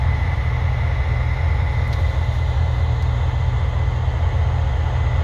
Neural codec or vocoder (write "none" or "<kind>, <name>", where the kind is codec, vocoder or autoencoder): none